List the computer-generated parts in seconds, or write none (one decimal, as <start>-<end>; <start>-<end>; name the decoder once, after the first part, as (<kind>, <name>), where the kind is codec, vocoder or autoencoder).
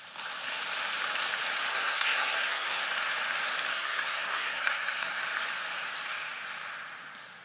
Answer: 1.7-2.8 (codec, SNAC); 3.7-5.2